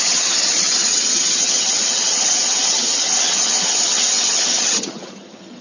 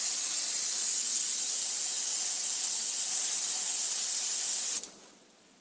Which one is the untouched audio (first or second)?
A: second